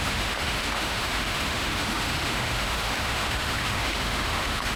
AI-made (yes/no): yes